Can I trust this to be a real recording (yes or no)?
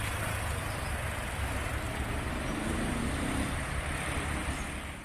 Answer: yes